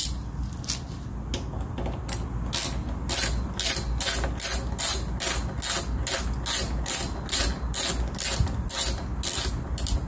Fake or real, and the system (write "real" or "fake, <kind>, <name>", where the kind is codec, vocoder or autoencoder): real